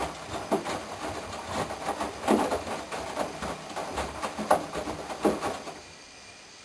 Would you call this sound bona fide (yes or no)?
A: yes